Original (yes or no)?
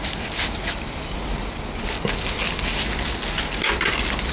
yes